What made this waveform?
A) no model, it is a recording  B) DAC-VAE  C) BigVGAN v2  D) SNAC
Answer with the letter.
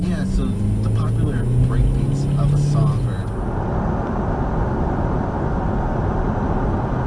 A